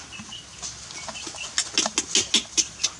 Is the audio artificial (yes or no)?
no